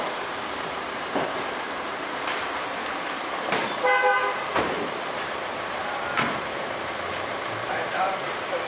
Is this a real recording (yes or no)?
no